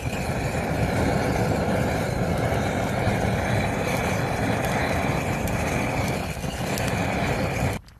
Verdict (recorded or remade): remade